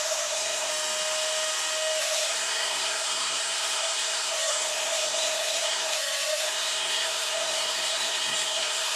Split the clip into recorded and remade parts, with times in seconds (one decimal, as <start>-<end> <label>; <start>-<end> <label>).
0.0-0.7 remade; 0.7-2.0 recorded; 2.0-9.0 remade